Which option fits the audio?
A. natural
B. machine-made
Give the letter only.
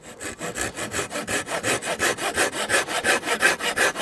A